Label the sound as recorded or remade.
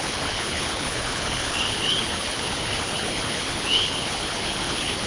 remade